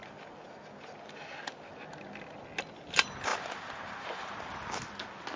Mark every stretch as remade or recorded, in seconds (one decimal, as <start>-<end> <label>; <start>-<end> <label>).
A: 0.0-3.3 recorded; 3.3-4.5 remade; 4.5-5.4 recorded